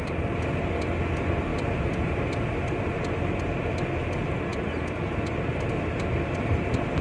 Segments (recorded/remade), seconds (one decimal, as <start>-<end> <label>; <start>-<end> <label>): 0.0-7.0 recorded